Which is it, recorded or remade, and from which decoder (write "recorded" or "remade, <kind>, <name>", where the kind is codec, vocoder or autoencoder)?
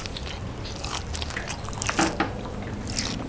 recorded